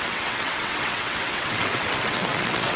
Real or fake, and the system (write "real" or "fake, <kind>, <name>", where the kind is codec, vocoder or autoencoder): fake, vocoder, WaveNeXt